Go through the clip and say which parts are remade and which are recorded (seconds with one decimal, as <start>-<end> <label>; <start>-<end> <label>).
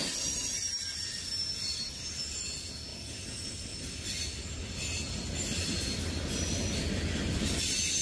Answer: 0.0-2.9 recorded; 2.9-3.9 remade; 3.9-8.0 recorded